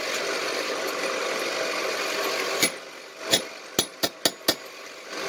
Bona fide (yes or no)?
yes